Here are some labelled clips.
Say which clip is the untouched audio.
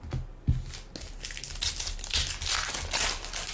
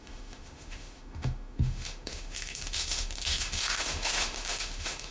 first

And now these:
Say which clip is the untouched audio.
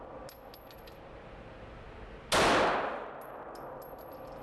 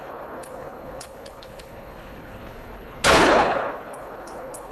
first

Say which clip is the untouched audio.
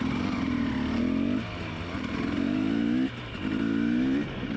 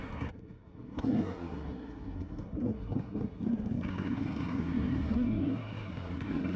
first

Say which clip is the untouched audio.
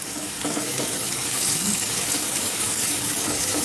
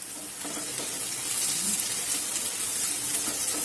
second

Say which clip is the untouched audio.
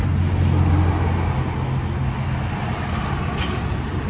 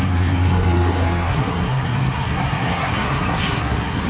first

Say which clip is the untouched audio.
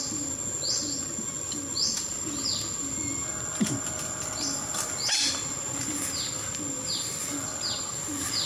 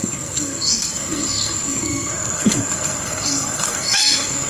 first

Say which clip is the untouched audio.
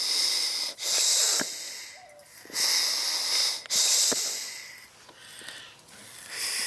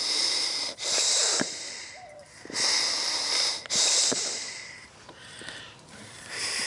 first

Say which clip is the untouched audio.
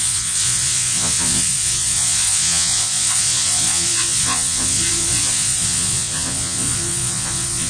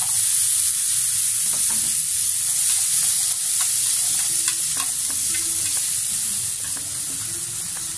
second